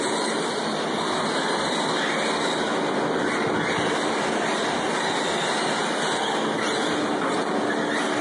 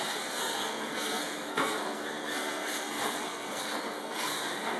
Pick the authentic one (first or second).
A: first